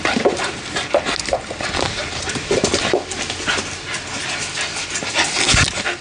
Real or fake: real